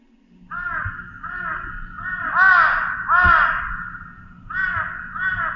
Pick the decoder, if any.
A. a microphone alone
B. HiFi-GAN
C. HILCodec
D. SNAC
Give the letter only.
A